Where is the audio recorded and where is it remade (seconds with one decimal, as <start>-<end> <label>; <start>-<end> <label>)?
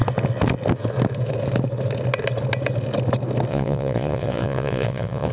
0.0-3.5 recorded; 3.5-5.3 remade